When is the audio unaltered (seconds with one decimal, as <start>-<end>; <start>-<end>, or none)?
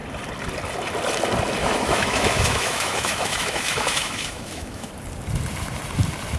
0.0-1.6; 4.9-6.4